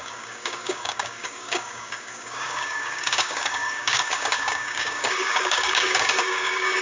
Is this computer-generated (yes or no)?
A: yes